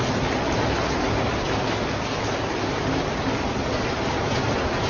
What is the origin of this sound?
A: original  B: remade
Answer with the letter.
A